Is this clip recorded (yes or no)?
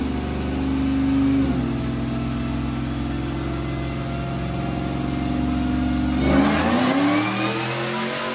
yes